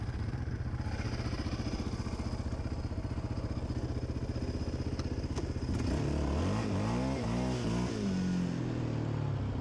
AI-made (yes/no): no